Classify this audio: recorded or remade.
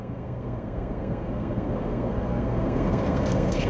remade